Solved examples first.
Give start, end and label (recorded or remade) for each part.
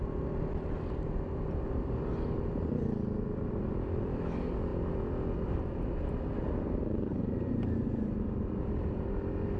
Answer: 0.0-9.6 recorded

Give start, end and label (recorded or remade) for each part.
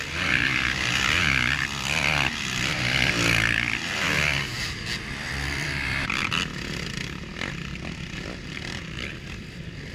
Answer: 0.0-9.9 recorded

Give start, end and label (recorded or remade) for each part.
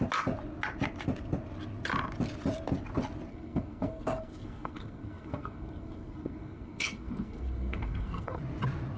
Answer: 0.0-3.3 recorded; 3.3-8.4 remade; 8.4-9.0 recorded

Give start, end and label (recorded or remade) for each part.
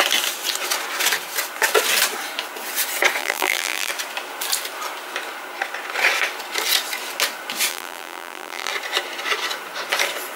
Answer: 0.0-3.2 recorded; 3.2-3.9 remade; 3.9-7.7 recorded; 7.7-8.7 remade; 8.7-10.4 recorded